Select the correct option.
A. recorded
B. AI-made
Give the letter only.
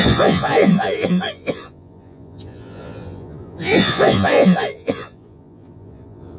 B